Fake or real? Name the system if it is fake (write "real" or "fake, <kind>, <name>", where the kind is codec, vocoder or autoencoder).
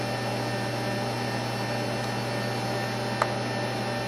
real